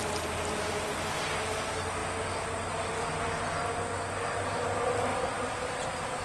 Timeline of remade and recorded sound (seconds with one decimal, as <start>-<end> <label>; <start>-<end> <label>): 0.0-5.1 recorded; 5.1-5.8 remade; 5.8-6.2 recorded